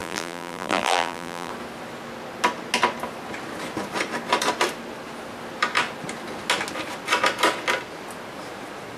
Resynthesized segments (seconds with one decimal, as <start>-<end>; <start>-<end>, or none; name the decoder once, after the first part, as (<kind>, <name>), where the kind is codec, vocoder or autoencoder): 0.0-1.5 (vocoder, BigVGAN v2)